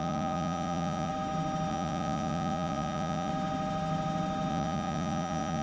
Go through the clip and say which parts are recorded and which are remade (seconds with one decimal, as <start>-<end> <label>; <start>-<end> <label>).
0.0-1.1 remade; 1.1-1.7 recorded; 1.7-3.3 remade; 3.3-4.5 recorded; 4.5-5.6 remade